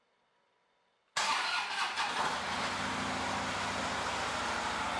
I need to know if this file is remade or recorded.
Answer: recorded